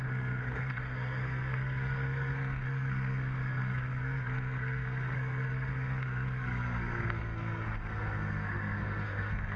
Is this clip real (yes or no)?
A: no